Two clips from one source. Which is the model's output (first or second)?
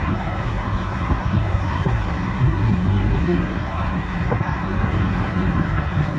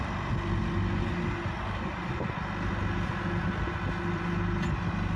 first